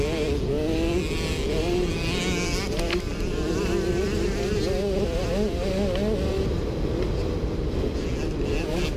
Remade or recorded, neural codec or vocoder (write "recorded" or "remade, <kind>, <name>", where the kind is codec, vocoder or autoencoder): recorded